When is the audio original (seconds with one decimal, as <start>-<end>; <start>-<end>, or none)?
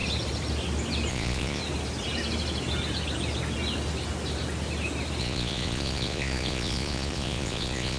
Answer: 0.0-1.1; 1.6-5.2